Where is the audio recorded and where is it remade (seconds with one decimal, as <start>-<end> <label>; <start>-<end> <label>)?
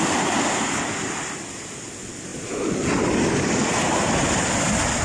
0.0-5.0 recorded